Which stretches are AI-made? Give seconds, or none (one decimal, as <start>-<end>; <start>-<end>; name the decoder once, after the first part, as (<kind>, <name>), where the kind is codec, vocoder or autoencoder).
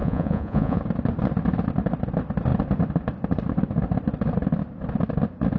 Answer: 0.0-0.8 (vocoder, Vocos)